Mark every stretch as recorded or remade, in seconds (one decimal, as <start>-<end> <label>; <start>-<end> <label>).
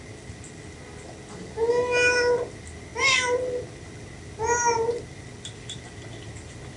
0.0-6.8 recorded